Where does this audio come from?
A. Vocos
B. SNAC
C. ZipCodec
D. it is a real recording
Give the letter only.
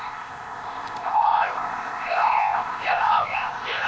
C